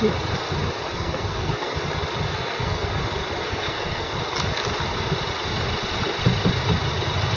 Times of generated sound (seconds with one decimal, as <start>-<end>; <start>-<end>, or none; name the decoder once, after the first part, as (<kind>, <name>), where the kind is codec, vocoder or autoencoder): 0.9-1.8 (codec, SNAC); 2.3-3.0; 3.4-4.1